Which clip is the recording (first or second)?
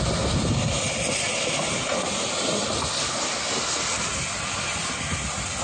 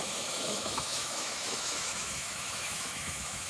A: first